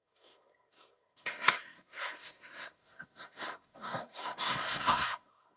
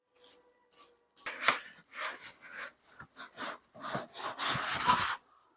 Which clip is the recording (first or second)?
second